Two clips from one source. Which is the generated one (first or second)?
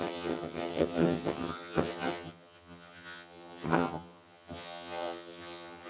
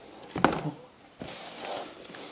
first